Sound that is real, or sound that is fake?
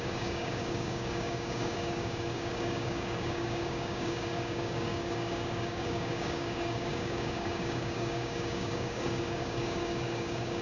fake